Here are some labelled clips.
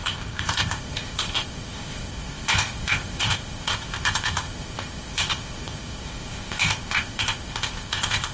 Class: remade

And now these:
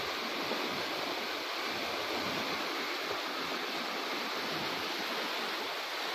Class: recorded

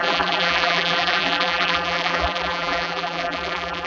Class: remade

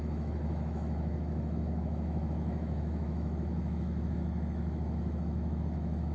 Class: remade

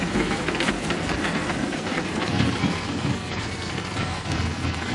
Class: remade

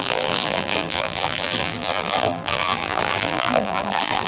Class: remade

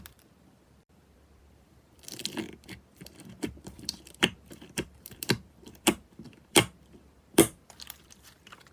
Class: remade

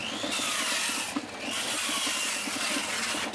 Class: recorded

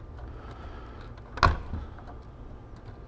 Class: recorded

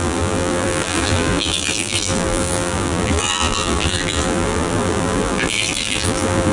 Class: remade